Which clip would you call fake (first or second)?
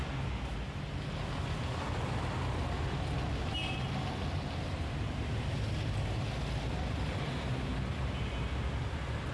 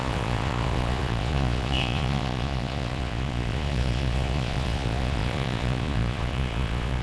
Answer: second